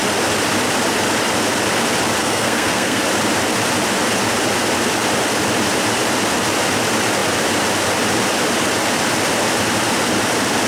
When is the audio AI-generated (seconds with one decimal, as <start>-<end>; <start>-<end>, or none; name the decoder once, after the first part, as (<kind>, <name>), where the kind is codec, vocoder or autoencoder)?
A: 2.2-3.0 (codec, SNAC)

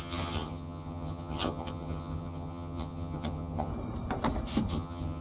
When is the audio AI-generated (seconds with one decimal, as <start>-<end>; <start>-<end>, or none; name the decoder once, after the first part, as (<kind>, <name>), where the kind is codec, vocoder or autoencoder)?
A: 0.0-3.7 (vocoder, HiFi-GAN); 4.7-5.2

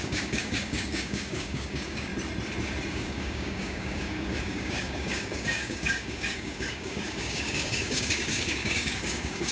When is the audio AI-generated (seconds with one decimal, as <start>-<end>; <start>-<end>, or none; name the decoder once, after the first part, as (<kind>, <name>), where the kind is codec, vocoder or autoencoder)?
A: 0.0-2.1 (codec, DAC); 2.9-9.5

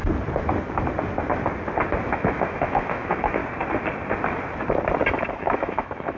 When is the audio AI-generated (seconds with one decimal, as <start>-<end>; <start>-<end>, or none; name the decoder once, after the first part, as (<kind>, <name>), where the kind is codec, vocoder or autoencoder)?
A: 2.1-3.4 (autoencoder, DAC-VAE); 5.3-6.2

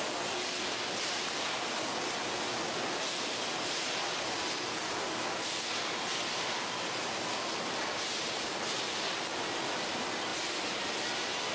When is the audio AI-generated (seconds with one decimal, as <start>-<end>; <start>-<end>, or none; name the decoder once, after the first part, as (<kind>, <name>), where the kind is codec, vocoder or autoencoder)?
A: none